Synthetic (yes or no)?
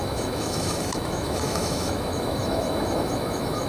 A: yes